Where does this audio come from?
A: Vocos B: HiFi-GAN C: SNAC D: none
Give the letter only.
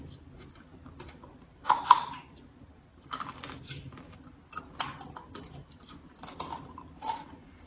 D